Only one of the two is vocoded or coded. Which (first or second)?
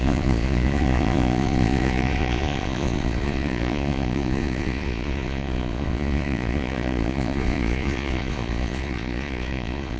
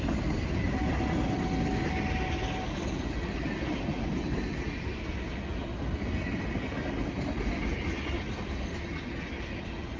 first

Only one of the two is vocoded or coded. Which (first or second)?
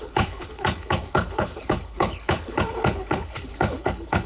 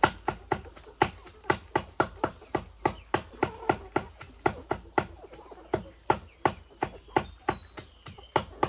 first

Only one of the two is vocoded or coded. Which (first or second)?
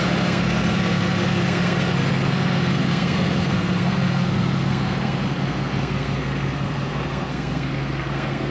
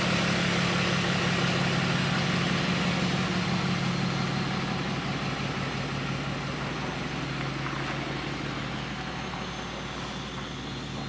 first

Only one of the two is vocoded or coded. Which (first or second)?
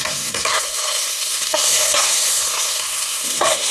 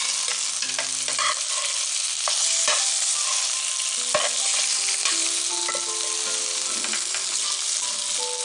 first